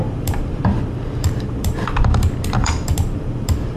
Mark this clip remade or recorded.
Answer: remade